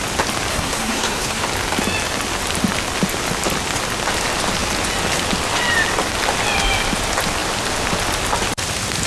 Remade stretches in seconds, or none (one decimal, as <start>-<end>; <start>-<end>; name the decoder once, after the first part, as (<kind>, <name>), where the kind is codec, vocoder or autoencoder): 0.5-1.4 (codec, SNAC)